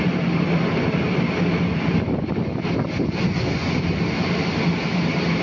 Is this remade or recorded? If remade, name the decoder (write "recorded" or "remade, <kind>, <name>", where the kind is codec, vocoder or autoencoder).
recorded